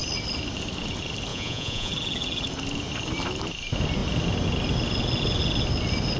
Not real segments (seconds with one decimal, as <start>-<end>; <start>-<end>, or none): 1.3-1.9